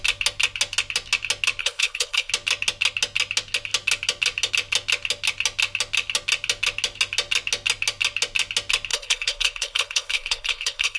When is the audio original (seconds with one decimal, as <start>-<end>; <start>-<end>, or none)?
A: 0.0-1.6; 2.3-8.9